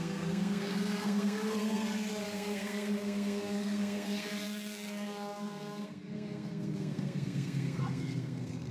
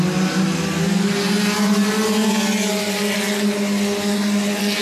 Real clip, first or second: second